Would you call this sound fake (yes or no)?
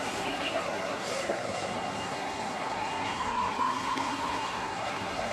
yes